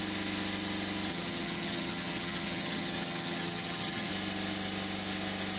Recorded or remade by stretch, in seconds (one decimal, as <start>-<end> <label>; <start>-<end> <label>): 0.0-1.1 recorded; 1.1-4.1 remade; 4.1-5.6 recorded